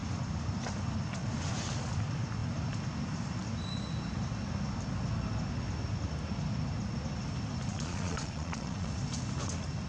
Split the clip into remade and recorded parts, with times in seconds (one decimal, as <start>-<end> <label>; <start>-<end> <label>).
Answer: 0.0-7.7 recorded; 7.7-8.9 remade; 8.9-9.9 recorded